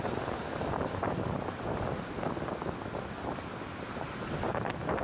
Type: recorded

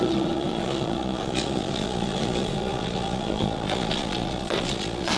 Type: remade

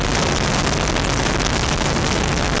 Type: recorded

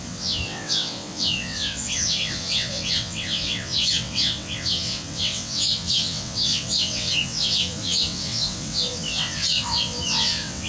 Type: remade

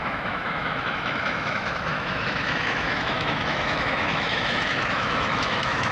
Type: remade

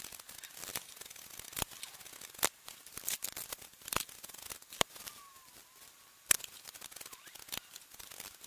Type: recorded